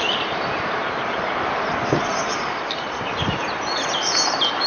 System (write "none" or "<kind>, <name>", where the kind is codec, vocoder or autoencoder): vocoder, BigVGAN v2